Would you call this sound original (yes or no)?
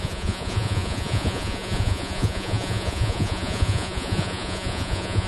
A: no